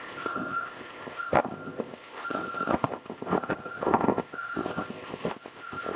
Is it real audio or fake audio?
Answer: fake